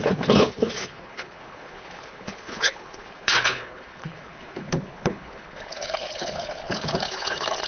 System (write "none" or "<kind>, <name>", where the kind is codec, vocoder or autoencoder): codec, HILCodec